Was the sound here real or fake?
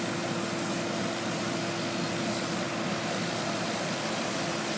real